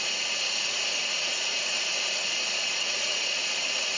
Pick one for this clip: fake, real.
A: fake